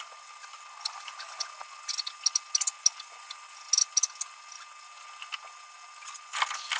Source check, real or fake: real